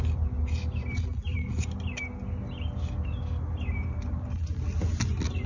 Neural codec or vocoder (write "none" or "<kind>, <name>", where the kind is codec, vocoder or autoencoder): none